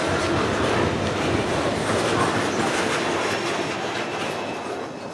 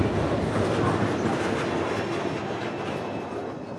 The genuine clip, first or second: second